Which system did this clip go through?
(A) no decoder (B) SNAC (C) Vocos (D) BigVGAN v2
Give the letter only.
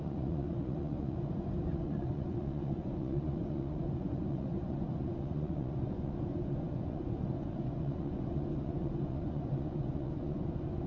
C